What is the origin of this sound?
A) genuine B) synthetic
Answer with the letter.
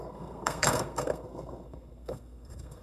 B